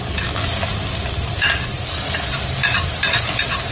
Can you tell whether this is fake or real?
real